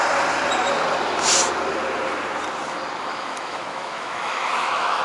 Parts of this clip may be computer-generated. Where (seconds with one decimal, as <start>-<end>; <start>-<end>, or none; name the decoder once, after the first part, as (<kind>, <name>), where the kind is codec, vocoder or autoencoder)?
3.1-5.0 (autoencoder, DAC-VAE)